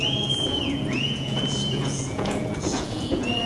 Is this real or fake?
fake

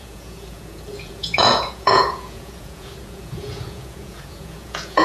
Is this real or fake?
fake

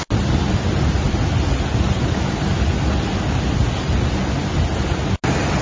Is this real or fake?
real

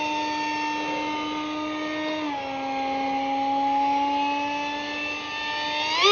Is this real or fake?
real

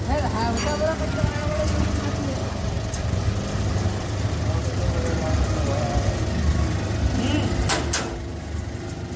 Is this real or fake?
real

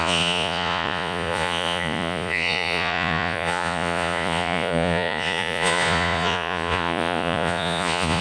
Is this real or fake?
fake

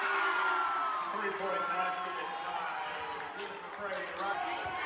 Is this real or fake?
real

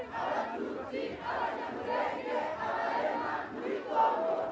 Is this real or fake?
real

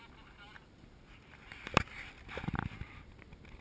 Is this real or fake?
real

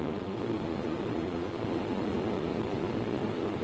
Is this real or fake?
fake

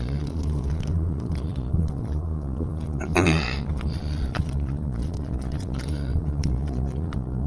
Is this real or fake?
fake